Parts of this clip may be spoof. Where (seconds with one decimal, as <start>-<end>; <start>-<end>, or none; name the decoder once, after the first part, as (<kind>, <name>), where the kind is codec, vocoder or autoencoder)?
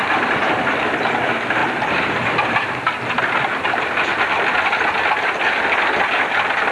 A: none